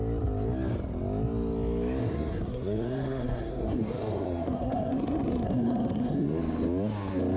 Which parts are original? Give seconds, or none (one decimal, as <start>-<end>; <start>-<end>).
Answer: 0.0-2.0; 6.4-7.4